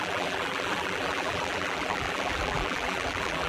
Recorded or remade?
remade